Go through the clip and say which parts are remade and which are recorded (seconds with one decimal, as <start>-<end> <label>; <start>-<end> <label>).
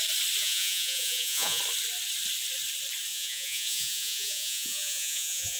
0.0-0.4 recorded; 0.4-1.6 remade; 1.6-3.1 recorded; 3.1-5.6 remade